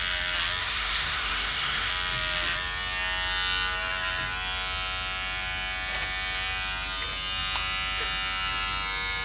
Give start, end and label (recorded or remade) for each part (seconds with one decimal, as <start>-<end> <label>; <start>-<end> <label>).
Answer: 0.0-0.6 recorded; 0.6-1.9 remade; 1.9-9.2 recorded